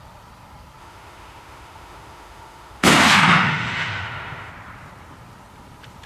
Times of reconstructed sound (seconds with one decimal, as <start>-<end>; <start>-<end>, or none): 0.8-4.5

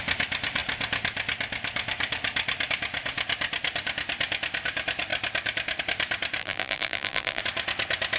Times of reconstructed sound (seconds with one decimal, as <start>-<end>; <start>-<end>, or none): 6.4-7.4

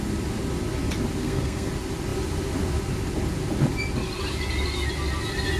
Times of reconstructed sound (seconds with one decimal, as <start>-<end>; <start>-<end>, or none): 1.2-1.7

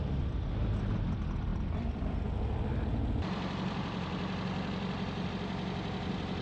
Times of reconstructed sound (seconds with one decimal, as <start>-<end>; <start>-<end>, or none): none